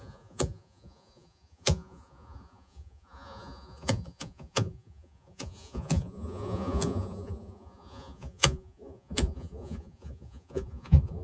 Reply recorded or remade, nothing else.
remade